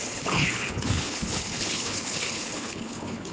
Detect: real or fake fake